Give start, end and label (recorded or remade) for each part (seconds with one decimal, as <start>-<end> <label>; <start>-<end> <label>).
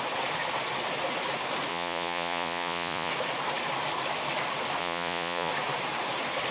0.0-1.7 recorded; 1.7-3.1 remade; 3.1-4.8 recorded; 4.8-5.5 remade; 5.5-6.5 recorded